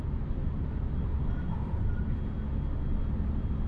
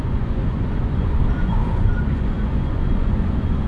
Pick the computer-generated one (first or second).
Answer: second